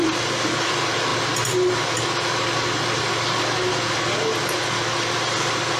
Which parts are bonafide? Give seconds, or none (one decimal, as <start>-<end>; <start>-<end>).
0.0-5.8